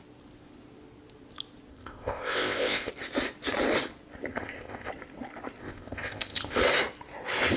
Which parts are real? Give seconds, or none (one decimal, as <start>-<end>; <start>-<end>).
0.0-1.7; 2.9-4.3; 4.9-5.6; 6.6-7.6